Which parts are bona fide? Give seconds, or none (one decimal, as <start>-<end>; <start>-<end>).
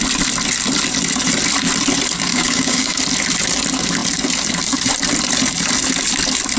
0.0-2.3; 3.0-6.6